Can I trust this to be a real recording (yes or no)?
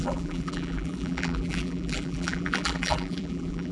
no